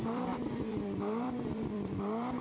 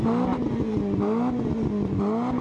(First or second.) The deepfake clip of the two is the first